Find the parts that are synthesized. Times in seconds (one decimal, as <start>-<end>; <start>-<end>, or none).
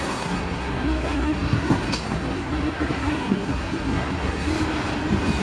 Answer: 0.0-4.5